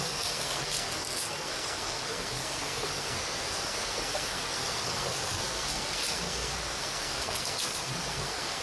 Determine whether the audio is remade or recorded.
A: remade